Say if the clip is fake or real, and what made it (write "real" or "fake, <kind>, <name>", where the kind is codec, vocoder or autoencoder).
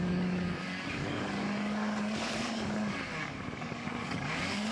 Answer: fake, codec, DAC